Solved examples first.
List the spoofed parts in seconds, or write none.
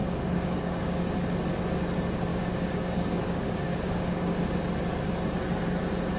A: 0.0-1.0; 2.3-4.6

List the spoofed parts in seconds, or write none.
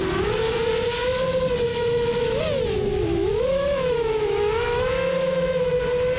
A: 1.7-2.4; 2.9-5.8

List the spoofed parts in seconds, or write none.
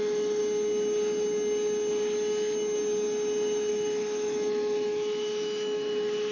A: 0.0-0.4; 3.7-6.3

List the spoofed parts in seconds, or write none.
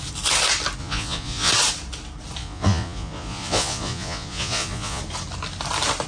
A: 0.8-1.5; 2.4-5.0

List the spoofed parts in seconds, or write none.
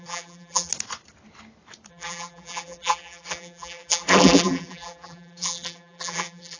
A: 0.0-0.7; 1.9-6.6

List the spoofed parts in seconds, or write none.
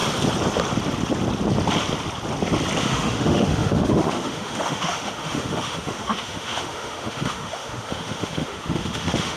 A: 2.8-9.4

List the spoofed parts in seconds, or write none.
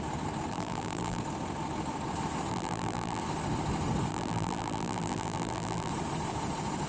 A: 0.5-1.2; 2.5-3.2; 4.1-5.9